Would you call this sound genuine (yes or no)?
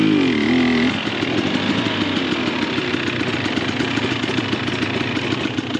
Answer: yes